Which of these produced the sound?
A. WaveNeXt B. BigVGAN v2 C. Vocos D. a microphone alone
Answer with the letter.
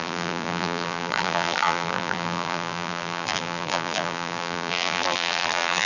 B